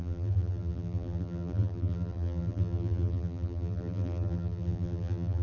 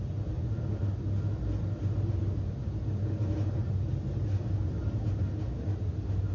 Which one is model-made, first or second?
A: first